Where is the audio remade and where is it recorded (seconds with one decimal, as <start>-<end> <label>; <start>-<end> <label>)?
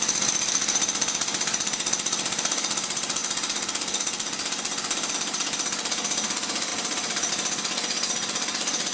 0.0-6.7 recorded; 6.7-7.3 remade; 7.3-8.9 recorded